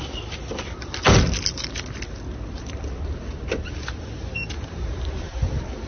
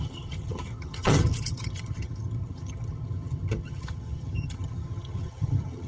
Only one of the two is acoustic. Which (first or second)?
first